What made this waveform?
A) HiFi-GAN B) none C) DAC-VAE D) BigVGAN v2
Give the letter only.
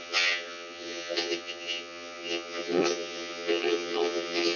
A